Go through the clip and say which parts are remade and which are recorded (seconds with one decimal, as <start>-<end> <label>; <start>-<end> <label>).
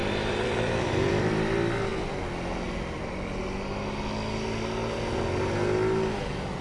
0.0-1.2 remade; 1.2-6.6 recorded